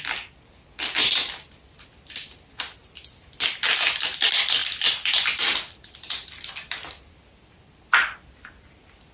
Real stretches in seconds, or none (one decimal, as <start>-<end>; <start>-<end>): 0.0-9.1